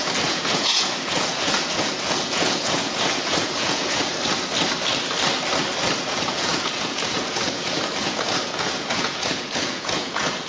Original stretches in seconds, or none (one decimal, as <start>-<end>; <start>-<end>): 4.1-6.0